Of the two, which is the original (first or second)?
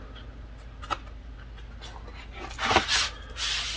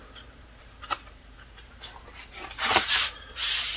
first